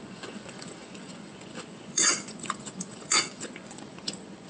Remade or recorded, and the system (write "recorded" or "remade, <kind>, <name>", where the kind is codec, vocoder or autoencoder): remade, vocoder, Vocos